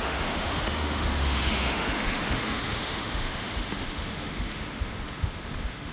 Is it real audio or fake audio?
fake